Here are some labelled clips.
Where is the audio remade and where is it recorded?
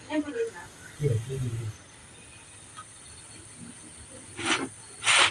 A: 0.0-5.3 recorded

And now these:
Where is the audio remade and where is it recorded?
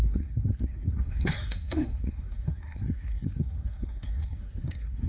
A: 0.0-5.1 remade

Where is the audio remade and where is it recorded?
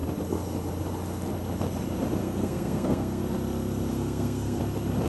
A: 0.0-2.2 recorded; 2.2-3.2 remade; 3.2-3.9 recorded; 3.9-4.6 remade; 4.6-5.1 recorded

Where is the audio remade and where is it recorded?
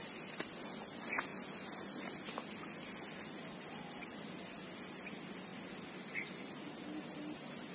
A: 0.0-7.7 recorded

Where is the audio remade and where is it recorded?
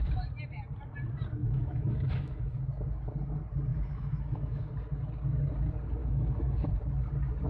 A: 0.0-1.4 recorded; 1.4-2.6 remade; 2.6-3.7 recorded; 3.7-4.7 remade; 4.7-6.0 recorded; 6.0-6.7 remade; 6.7-7.5 recorded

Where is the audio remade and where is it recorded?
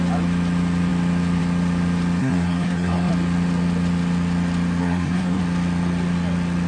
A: 0.0-2.2 recorded; 2.2-3.1 remade; 3.1-4.8 recorded; 4.8-5.4 remade; 5.4-6.7 recorded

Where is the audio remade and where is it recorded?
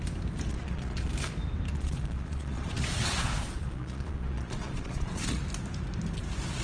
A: 0.0-0.5 recorded; 0.5-1.1 remade; 1.1-1.7 recorded; 1.7-5.4 remade; 5.4-6.6 recorded